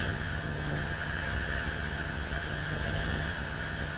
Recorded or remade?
remade